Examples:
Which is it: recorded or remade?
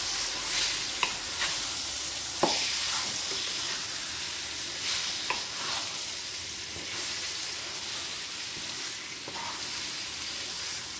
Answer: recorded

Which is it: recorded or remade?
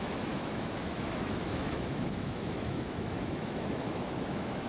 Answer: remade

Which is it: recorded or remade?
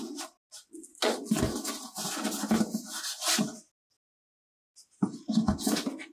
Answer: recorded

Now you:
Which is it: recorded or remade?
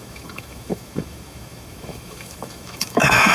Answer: remade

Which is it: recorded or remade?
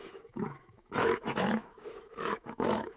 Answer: remade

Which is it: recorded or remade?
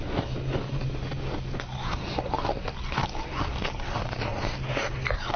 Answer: recorded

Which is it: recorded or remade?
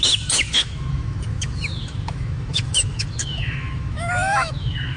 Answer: remade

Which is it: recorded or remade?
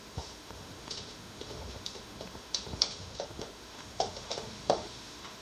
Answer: remade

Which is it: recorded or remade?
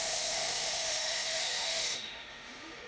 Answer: remade